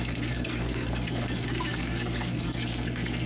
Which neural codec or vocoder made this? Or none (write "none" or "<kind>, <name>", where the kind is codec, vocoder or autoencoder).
codec, SNAC